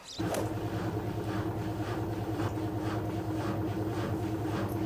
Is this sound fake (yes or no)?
no